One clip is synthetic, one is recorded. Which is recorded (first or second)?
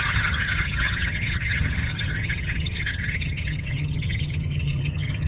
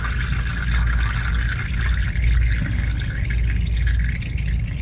second